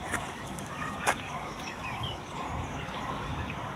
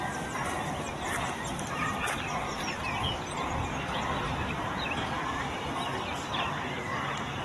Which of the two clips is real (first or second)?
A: second